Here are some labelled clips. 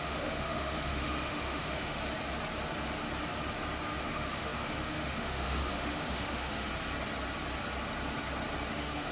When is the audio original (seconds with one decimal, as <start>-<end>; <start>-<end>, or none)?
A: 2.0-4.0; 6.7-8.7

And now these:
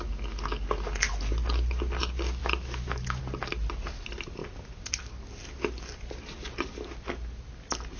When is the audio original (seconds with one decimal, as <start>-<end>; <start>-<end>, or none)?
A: 0.0-2.4; 3.2-8.0

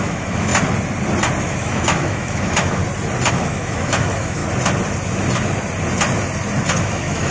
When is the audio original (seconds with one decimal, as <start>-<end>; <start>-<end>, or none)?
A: 0.5-1.4; 2.8-3.3; 4.4-6.8

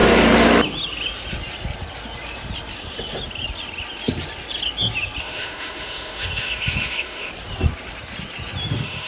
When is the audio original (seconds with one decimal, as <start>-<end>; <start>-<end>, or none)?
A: 0.0-5.2; 7.3-8.7